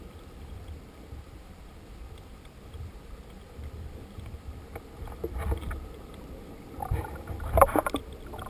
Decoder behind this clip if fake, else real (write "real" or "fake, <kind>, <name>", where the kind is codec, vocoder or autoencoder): fake, vocoder, BigVGAN v2